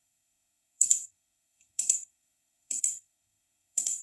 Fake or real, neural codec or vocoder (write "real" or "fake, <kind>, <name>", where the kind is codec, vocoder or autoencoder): fake, codec, SNAC